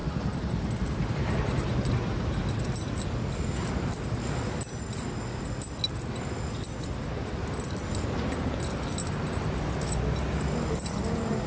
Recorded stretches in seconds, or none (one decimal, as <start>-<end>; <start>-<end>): 0.0-11.5